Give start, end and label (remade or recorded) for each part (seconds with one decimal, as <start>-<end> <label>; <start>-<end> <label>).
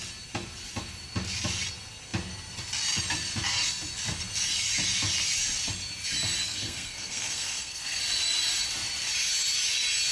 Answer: 0.0-6.4 recorded; 6.4-8.0 remade; 8.0-10.1 recorded